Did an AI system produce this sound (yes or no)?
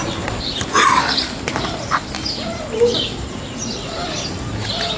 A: no